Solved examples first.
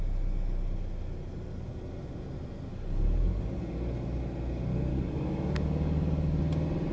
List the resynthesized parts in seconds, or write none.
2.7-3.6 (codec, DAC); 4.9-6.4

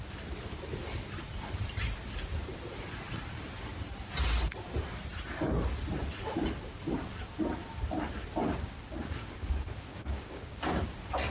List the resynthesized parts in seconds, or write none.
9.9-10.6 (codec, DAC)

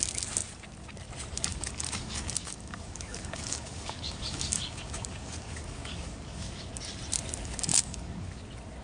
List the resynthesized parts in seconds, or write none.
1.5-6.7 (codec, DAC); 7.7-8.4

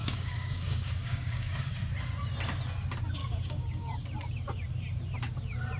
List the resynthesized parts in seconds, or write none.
0.0-1.7 (codec, DAC); 3.2-3.9

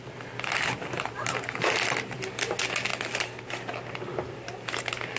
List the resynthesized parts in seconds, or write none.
none

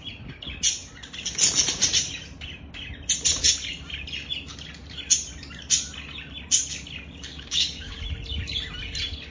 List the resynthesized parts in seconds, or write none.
7.3-8.0 (codec, DAC)

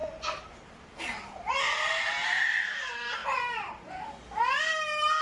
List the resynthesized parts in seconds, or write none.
none